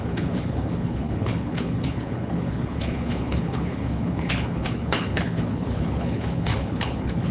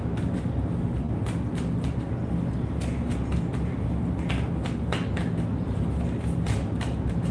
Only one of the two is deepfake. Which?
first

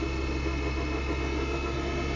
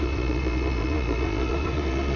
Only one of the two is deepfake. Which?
second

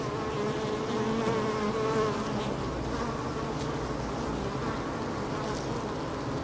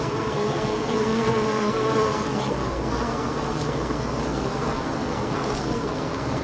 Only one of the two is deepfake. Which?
second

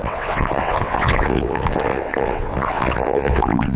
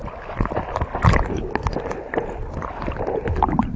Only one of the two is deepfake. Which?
first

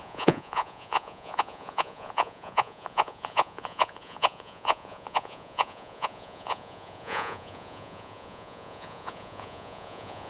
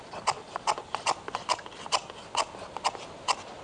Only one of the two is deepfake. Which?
first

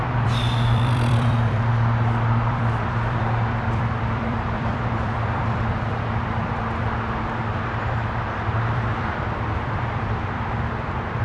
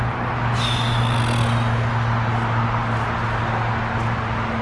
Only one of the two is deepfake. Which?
first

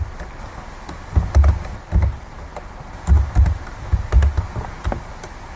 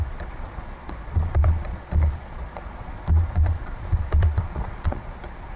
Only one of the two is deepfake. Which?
second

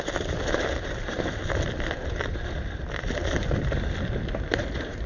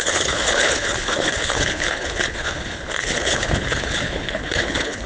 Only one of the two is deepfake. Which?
second